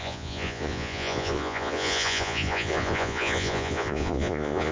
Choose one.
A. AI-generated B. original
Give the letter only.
A